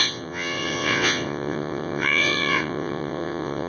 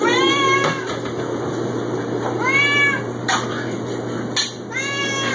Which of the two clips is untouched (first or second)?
second